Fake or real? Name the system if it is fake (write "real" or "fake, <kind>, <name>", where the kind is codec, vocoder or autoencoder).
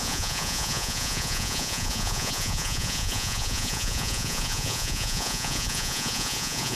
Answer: fake, vocoder, Vocos